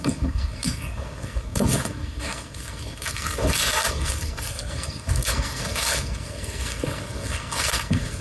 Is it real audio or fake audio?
fake